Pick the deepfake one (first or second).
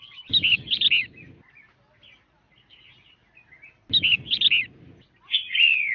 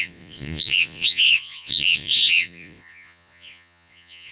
second